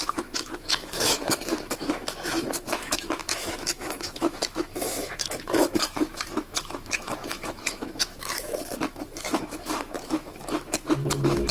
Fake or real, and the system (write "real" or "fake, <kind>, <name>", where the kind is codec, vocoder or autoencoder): fake, autoencoder, DAC-VAE